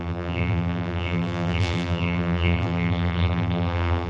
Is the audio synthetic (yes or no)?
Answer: yes